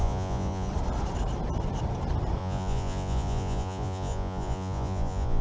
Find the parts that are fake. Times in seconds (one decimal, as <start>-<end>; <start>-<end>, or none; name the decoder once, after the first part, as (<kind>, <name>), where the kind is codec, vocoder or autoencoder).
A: 0.0-0.7 (vocoder, Vocos); 2.4-5.4